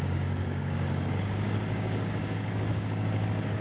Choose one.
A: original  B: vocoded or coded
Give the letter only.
B